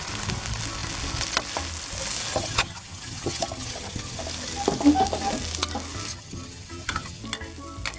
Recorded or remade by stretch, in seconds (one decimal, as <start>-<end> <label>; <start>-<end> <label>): 0.0-2.3 recorded; 2.3-4.2 remade; 4.2-6.1 recorded; 6.1-7.2 remade; 7.2-8.0 recorded